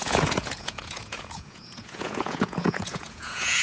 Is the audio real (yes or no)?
no